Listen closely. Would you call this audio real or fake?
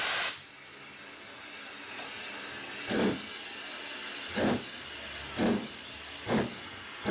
real